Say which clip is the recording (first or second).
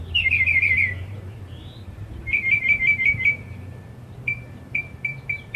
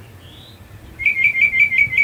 second